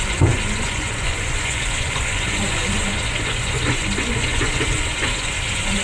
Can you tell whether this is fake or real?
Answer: fake